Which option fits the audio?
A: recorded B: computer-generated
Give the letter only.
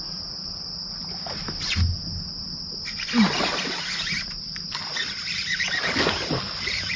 A